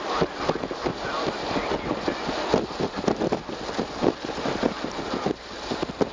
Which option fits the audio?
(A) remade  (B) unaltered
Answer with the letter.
B